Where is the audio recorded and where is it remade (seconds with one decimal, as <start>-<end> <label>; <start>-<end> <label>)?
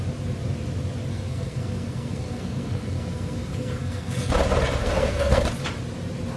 0.0-1.1 recorded; 1.1-4.3 remade; 4.3-4.8 recorded; 4.8-5.4 remade; 5.4-6.4 recorded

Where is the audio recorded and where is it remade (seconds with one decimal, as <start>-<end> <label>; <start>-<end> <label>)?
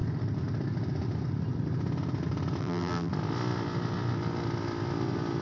0.0-2.6 recorded; 2.6-3.1 remade; 3.1-5.4 recorded